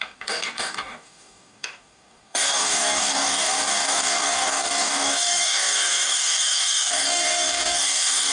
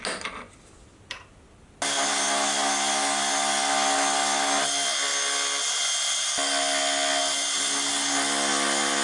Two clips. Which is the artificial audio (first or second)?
first